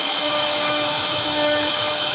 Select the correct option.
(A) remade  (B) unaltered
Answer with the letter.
A